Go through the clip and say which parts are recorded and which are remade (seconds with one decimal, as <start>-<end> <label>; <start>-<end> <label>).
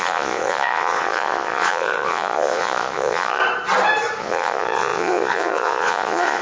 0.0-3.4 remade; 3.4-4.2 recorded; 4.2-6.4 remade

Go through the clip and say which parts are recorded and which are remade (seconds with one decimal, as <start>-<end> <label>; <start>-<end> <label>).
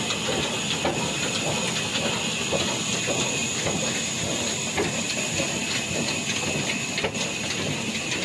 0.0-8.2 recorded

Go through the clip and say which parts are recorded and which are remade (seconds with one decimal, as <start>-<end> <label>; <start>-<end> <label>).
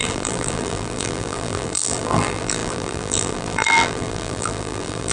0.0-5.1 remade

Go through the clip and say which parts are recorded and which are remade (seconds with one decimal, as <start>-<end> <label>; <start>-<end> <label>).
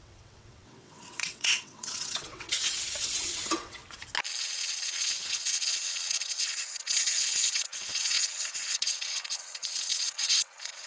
0.0-3.8 remade; 3.8-4.4 recorded; 4.4-10.9 remade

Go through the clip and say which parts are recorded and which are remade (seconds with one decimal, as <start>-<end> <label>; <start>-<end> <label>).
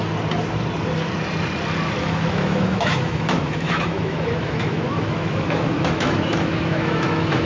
0.0-2.0 recorded; 2.0-7.5 remade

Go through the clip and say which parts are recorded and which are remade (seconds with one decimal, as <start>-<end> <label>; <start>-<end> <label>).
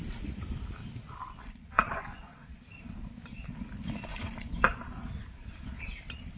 0.0-1.4 recorded; 1.4-2.6 remade; 2.6-4.1 recorded; 4.1-4.8 remade; 4.8-6.4 recorded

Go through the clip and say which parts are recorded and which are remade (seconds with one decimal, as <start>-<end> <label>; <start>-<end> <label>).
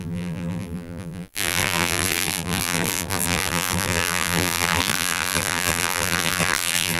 0.0-7.0 remade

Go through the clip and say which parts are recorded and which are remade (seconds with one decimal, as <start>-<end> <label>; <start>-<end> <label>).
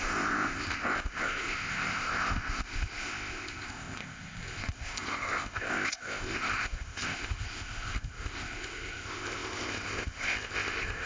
0.0-11.1 remade